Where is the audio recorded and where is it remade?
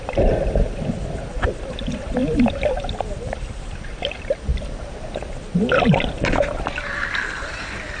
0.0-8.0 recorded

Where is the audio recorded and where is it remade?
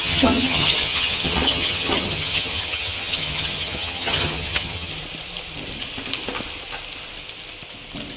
0.0-4.9 remade; 4.9-8.2 recorded